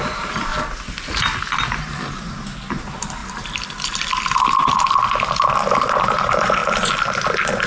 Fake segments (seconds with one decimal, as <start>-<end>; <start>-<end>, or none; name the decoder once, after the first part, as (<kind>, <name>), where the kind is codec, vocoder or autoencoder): 0.0-0.5 (vocoder, BigVGAN v2); 2.7-3.2; 5.7-6.6